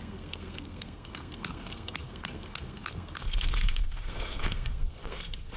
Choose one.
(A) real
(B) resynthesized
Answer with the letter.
B